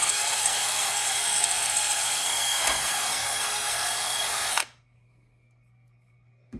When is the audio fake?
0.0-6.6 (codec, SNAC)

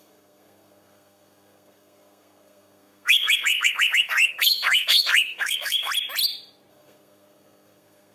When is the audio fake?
0.0-5.9 (codec, SNAC); 6.7-8.1